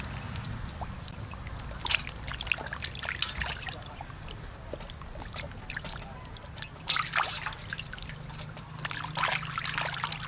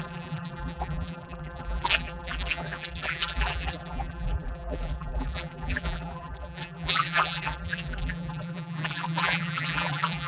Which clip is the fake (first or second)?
second